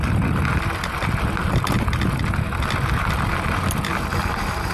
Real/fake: real